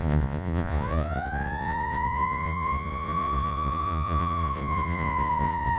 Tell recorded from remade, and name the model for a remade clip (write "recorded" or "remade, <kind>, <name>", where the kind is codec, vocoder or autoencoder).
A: remade, vocoder, Vocos